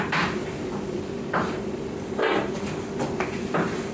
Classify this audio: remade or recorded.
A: remade